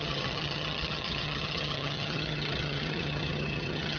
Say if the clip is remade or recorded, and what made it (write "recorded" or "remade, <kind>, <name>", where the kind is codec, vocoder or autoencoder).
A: remade, vocoder, HiFi-GAN